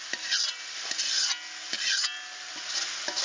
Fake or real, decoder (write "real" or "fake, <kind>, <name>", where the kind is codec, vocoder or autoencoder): real